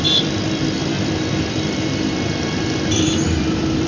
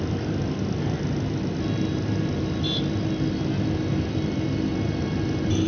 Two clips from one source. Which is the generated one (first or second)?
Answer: first